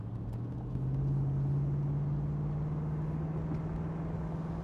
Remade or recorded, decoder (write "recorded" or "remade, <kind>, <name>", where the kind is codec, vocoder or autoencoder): recorded